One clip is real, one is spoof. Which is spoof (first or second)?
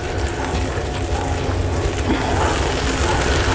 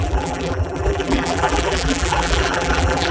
second